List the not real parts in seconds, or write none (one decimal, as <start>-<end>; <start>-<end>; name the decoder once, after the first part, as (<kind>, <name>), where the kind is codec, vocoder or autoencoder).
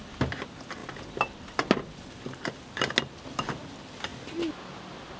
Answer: none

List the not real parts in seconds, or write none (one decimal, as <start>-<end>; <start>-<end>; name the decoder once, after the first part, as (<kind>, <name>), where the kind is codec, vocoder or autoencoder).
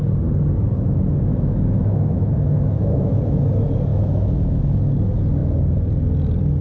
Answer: 1.3-3.2 (autoencoder, DAC-VAE); 3.9-4.8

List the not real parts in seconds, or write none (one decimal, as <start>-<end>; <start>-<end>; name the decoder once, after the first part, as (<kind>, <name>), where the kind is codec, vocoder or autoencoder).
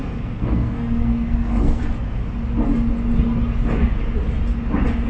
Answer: 0.0-1.8 (codec, SNAC)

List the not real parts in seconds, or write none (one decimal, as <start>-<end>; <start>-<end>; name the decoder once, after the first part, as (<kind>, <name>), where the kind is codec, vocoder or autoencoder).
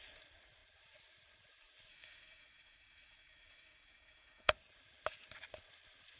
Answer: 1.9-4.5 (autoencoder, DAC-VAE)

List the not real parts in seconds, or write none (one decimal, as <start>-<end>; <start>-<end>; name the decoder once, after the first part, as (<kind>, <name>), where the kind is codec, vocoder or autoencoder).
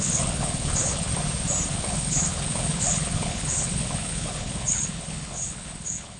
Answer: 0.0-1.1 (codec, HILCodec); 1.7-6.2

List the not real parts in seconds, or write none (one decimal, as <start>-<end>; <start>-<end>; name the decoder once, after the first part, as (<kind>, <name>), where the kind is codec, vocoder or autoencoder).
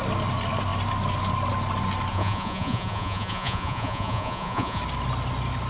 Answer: 2.1-4.8 (vocoder, Vocos)